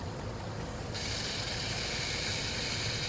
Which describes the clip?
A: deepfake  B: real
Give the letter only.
B